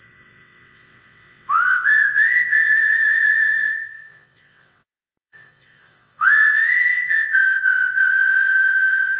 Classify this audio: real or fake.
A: fake